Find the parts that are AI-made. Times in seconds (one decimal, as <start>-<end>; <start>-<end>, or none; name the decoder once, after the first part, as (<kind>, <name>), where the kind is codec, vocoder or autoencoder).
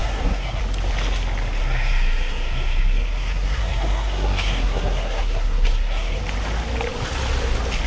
0.0-0.6 (codec, SNAC); 1.6-6.2